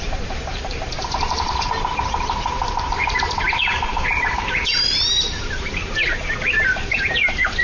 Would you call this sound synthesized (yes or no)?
yes